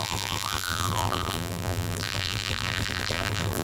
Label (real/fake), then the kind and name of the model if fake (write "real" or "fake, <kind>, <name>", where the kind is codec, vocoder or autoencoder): fake, vocoder, BigVGAN v2